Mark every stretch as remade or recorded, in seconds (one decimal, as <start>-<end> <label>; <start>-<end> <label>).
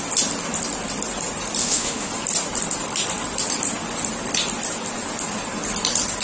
0.0-1.6 recorded; 1.6-2.1 remade; 2.1-6.2 recorded